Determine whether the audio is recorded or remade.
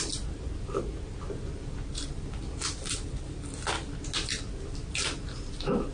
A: recorded